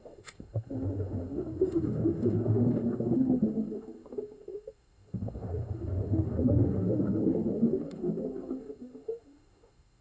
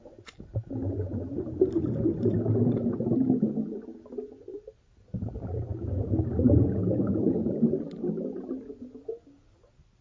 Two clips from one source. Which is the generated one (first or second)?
first